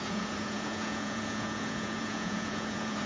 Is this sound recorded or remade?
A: remade